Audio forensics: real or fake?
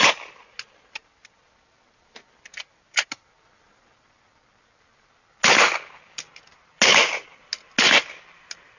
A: real